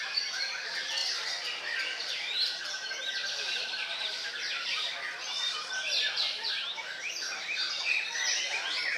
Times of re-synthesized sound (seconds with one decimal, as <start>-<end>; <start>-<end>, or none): 0.0-1.0; 1.6-9.0

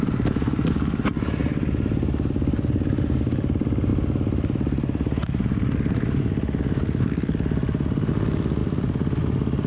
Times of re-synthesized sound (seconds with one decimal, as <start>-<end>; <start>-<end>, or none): 1.4-2.3; 8.6-9.7

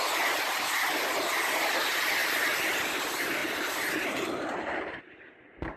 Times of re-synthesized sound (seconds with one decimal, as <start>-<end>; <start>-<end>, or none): 2.2-2.7; 3.4-5.0

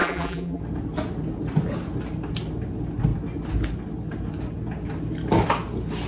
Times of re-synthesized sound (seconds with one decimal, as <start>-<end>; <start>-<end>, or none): 0.0-0.6